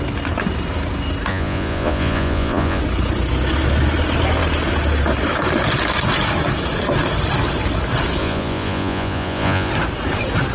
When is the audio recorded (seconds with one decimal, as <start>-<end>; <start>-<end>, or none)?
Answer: 0.0-1.3; 2.8-8.2; 9.7-10.5